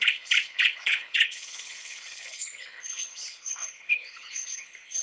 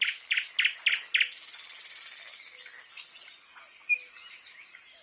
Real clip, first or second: second